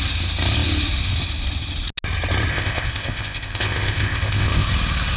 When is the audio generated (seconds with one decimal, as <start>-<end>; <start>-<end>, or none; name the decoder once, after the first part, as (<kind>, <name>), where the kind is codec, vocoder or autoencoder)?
2.5-4.7 (codec, ZipCodec)